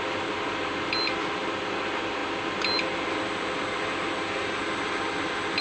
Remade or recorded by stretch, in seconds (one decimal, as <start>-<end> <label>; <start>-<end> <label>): 0.0-5.6 recorded